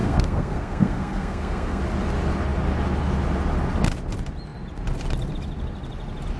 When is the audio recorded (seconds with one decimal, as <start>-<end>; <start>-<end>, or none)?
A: 1.8-6.4